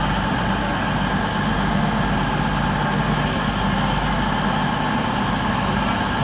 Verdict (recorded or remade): recorded